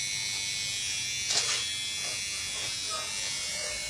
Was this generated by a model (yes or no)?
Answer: no